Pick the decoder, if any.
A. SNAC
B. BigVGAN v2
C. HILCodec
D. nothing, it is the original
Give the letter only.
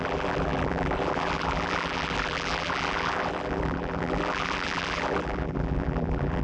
B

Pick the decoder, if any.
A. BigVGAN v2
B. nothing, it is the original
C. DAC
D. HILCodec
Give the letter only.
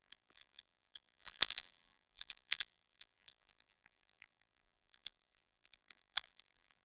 A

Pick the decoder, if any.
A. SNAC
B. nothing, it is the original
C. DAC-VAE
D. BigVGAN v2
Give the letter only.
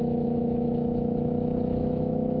C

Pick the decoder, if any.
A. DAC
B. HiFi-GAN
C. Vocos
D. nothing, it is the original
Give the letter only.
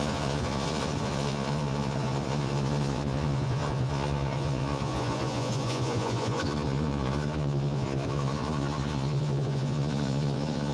C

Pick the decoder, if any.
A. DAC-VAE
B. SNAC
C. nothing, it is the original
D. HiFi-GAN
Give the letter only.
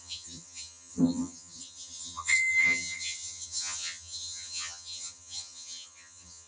D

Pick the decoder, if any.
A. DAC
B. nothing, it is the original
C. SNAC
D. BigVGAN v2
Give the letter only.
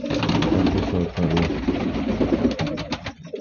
B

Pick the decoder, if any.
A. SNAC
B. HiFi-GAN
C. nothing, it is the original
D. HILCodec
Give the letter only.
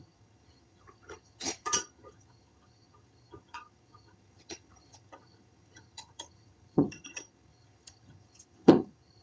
B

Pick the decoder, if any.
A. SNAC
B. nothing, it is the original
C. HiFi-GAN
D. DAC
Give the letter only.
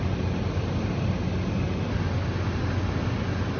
B